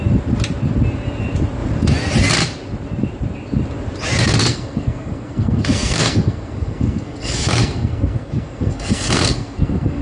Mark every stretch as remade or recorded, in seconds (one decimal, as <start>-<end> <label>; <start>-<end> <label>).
0.0-4.4 recorded; 4.4-10.0 remade